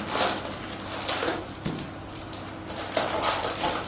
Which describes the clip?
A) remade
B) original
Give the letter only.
B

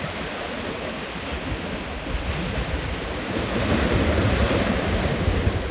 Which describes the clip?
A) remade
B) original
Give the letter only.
B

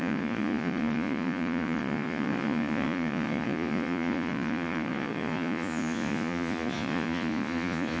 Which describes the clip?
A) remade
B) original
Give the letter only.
A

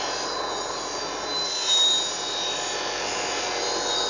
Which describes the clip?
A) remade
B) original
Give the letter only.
B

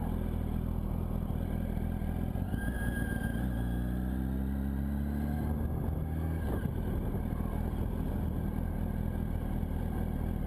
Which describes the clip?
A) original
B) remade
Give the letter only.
A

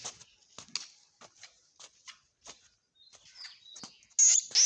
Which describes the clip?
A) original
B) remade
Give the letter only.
A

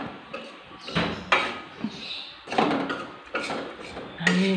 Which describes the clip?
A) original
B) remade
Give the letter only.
A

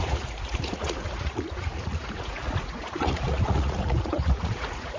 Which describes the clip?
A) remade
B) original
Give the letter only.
A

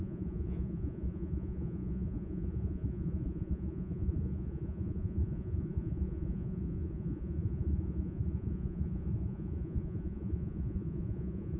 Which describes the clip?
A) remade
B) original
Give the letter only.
A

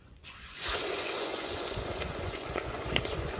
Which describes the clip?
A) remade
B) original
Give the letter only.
A